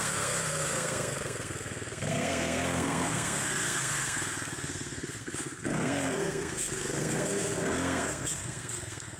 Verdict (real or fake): fake